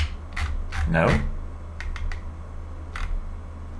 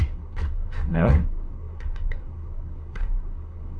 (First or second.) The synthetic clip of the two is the second